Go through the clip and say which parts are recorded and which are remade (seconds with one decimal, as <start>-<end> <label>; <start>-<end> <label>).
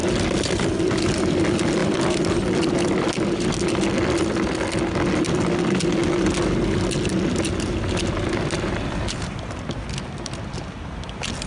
0.0-11.5 recorded